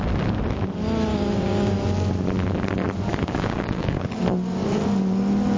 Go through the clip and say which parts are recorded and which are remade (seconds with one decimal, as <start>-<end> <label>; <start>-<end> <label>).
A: 0.0-1.1 recorded; 1.1-1.7 remade; 1.7-3.1 recorded; 3.1-4.2 remade; 4.2-5.6 recorded